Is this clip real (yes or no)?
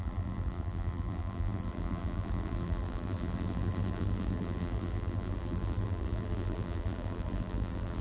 no